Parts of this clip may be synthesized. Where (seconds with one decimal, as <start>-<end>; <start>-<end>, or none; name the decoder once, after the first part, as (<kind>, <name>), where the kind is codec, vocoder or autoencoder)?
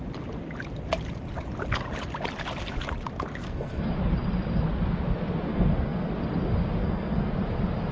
3.4-3.9 (codec, SNAC); 5.5-6.1; 6.8-7.3